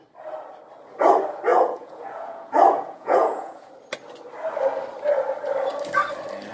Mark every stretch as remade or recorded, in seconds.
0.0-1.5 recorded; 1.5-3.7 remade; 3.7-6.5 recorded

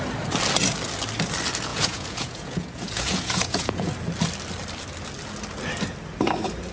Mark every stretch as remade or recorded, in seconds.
0.0-1.7 recorded; 1.7-3.9 remade; 3.9-6.7 recorded

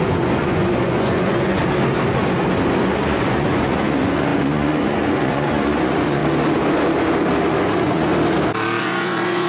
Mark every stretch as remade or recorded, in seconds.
0.0-1.6 remade; 1.6-2.8 recorded; 2.8-6.2 remade; 6.2-7.5 recorded; 7.5-8.1 remade; 8.1-8.8 recorded; 8.8-9.5 remade

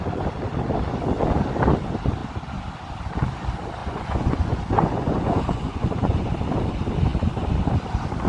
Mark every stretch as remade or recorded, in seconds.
0.0-3.8 recorded; 3.8-6.3 remade; 6.3-8.3 recorded